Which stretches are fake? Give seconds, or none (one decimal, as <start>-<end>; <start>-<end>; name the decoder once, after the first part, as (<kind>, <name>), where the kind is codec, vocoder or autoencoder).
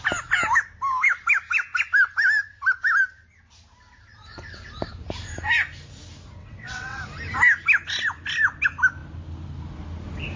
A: 6.4-7.0 (vocoder, WaveNeXt)